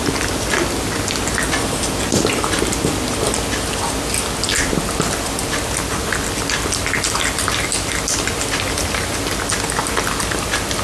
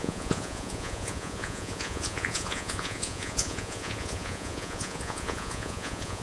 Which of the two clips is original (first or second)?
first